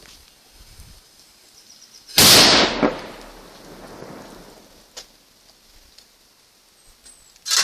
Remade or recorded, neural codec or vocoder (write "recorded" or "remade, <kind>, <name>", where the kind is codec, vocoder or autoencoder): recorded